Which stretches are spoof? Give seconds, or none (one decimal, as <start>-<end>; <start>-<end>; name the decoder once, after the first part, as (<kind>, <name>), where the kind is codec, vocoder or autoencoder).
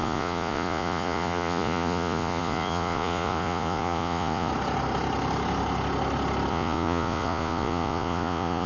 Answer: 0.0-4.5 (vocoder, Vocos); 6.5-8.7